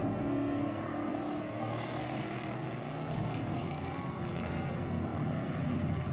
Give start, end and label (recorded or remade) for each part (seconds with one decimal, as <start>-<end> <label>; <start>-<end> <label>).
0.0-6.1 remade